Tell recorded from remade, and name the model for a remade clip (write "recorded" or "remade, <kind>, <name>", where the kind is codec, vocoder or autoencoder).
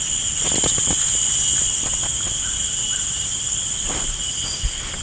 recorded